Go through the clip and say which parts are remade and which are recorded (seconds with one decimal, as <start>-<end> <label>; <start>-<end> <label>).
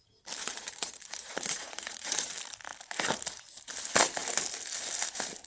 0.0-0.4 recorded; 0.4-2.3 remade; 2.3-5.5 recorded